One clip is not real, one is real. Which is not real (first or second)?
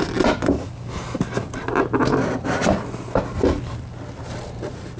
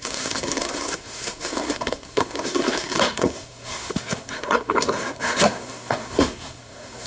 second